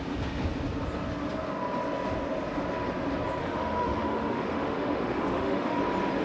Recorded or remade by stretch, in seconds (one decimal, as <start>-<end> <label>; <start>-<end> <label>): 0.0-3.4 recorded; 3.4-5.8 remade; 5.8-6.2 recorded